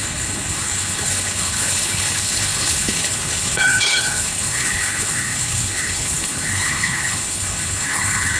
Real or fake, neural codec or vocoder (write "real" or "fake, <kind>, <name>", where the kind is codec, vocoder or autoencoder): fake, codec, HILCodec